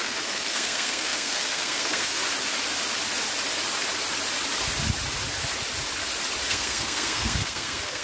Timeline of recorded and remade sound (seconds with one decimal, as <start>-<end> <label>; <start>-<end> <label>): 0.0-2.2 remade; 2.2-6.5 recorded; 6.5-8.0 remade